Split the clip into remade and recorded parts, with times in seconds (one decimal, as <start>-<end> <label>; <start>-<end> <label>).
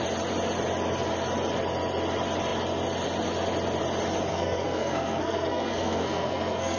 0.0-4.3 recorded; 4.3-6.8 remade